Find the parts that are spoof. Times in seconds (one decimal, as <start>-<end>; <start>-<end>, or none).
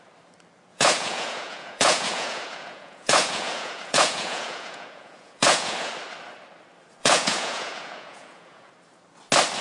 0.7-5.9; 7.0-8.7